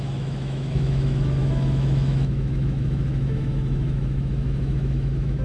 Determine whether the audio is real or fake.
fake